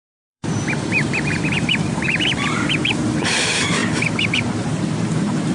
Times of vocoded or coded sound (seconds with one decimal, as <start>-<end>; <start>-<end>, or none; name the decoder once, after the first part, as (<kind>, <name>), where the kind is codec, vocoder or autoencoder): 0.0-3.8 (vocoder, BigVGAN v2); 4.3-5.5